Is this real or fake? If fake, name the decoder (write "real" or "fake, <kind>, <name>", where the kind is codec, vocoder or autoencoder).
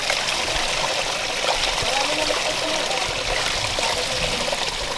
real